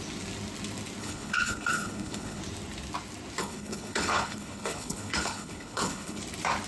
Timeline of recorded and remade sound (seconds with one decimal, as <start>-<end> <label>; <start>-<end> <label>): 0.0-1.0 recorded; 1.0-2.4 remade; 2.4-3.4 recorded; 3.4-6.2 remade; 6.2-6.7 recorded